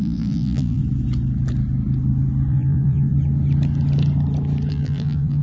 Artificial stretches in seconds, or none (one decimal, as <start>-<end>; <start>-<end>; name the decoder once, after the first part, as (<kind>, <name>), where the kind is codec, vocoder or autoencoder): 0.0-0.8 (vocoder, BigVGAN v2); 2.5-3.1; 4.7-5.4